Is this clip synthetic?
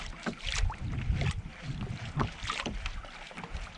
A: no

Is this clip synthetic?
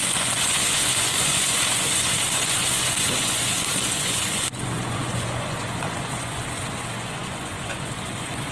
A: yes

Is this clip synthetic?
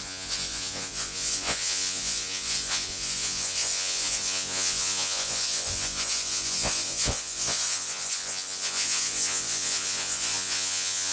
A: yes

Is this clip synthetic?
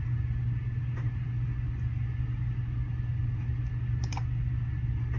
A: no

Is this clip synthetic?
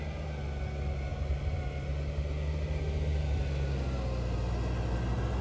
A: no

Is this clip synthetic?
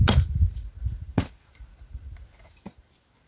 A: no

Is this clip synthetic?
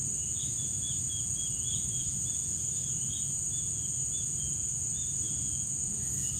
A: yes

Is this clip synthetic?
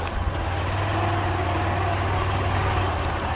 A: no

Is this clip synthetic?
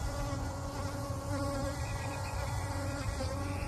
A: yes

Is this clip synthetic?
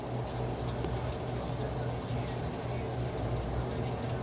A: no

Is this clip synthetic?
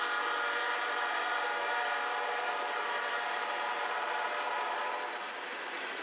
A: no